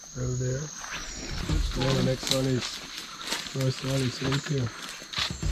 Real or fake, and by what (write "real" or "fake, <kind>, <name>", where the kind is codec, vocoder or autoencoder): real